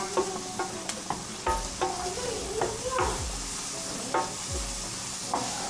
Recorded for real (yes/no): yes